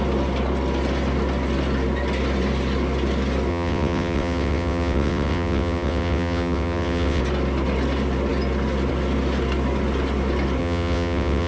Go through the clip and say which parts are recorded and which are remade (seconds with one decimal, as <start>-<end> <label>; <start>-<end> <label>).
0.0-3.5 recorded; 3.5-7.2 remade; 7.2-10.6 recorded; 10.6-11.5 remade